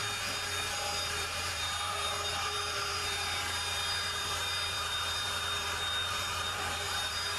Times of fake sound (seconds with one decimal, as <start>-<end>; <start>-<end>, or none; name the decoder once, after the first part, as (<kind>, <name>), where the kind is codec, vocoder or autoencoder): 1.0-7.4 (vocoder, BigVGAN v2)